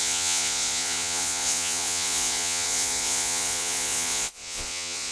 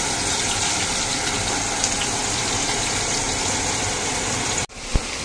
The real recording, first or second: second